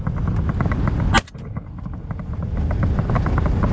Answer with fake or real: real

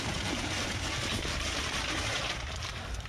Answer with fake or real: fake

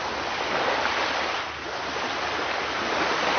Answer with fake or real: real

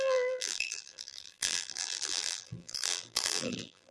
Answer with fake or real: fake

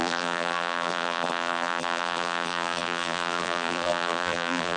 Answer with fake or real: fake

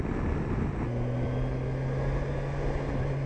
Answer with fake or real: real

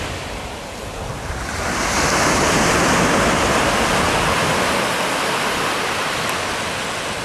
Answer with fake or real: real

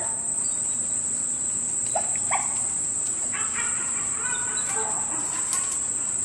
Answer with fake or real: fake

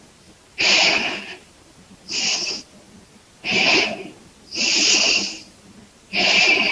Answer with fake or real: fake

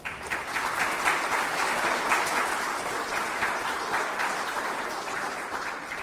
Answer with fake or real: real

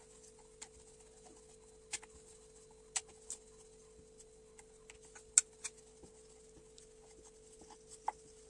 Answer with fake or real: real